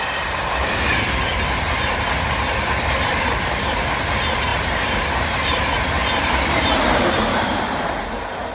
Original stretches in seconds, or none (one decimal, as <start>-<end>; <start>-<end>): 0.9-2.5